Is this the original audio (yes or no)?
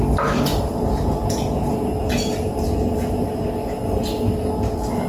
yes